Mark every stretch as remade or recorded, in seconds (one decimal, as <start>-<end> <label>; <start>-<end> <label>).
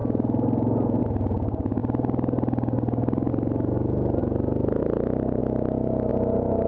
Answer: 0.0-6.7 recorded